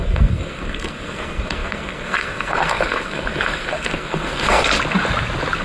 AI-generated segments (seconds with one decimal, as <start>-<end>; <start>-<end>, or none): 0.0-4.7